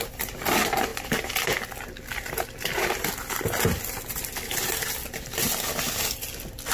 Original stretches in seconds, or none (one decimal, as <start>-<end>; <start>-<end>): 0.0-6.7